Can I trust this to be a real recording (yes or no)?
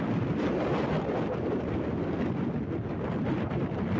no